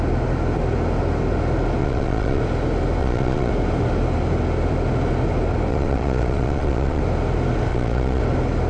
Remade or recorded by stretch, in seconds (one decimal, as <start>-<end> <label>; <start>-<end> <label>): 0.0-1.8 recorded; 1.8-2.4 remade; 2.4-3.0 recorded; 3.0-3.5 remade; 3.5-5.7 recorded; 5.7-7.0 remade; 7.0-7.7 recorded; 7.7-8.2 remade; 8.2-8.7 recorded